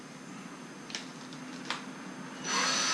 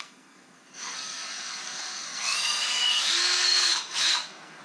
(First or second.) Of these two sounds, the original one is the first